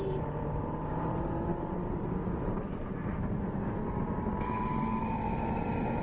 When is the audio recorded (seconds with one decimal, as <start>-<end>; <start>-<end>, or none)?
4.3-6.0